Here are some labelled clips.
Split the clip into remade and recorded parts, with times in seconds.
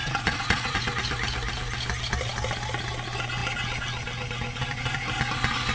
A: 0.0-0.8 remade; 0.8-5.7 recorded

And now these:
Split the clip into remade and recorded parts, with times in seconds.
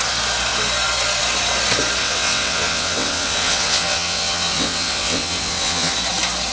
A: 0.0-2.0 recorded; 2.0-5.9 remade; 5.9-6.5 recorded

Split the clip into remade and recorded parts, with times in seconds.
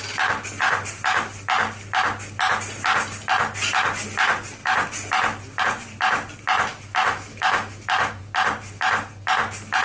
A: 0.0-6.7 recorded; 6.7-8.2 remade; 8.2-9.8 recorded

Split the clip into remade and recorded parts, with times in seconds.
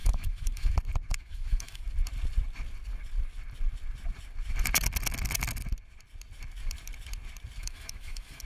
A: 0.0-0.7 remade; 0.7-1.1 recorded; 1.1-1.8 remade; 1.8-7.6 recorded; 7.6-8.4 remade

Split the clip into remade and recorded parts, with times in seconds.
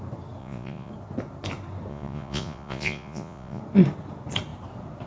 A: 0.0-0.4 recorded; 0.4-0.9 remade; 0.9-1.9 recorded; 1.9-3.6 remade; 3.6-5.1 recorded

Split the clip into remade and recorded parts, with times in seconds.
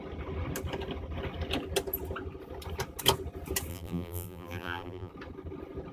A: 0.0-3.7 recorded; 3.7-5.1 remade; 5.1-5.9 recorded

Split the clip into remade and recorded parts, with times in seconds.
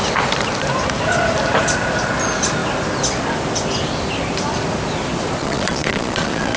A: 0.0-5.4 recorded; 5.4-6.6 remade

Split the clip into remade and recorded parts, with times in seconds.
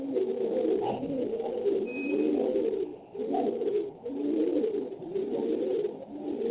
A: 0.0-2.1 remade; 2.1-2.9 recorded; 2.9-4.1 remade; 4.1-6.5 recorded